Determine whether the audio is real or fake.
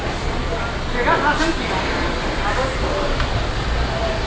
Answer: real